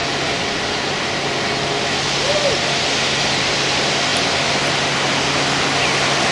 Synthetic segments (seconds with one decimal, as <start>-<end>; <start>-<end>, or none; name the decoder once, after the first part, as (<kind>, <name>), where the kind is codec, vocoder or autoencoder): none